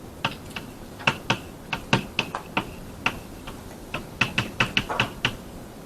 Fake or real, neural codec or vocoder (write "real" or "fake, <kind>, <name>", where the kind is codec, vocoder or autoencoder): real